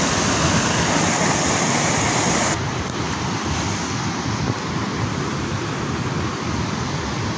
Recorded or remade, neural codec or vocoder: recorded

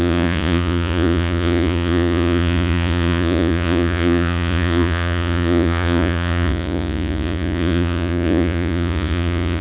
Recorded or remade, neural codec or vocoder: remade, vocoder, Vocos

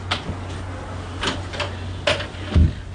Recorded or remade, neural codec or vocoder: recorded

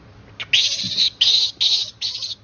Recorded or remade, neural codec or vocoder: recorded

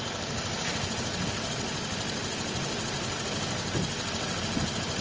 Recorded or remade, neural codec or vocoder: recorded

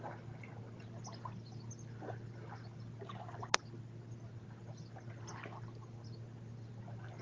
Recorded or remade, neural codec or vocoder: recorded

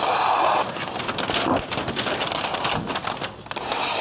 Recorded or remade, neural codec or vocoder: recorded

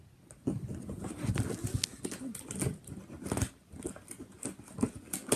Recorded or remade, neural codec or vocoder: recorded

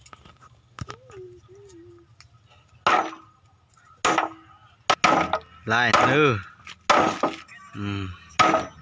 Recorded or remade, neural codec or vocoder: recorded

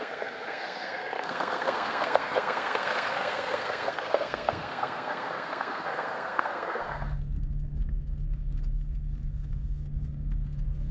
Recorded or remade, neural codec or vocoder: remade, codec, SNAC